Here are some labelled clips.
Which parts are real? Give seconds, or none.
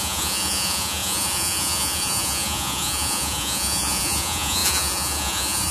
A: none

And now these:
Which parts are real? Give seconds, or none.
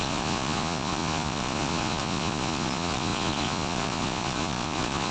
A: none